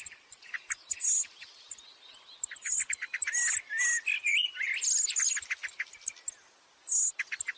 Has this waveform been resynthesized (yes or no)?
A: no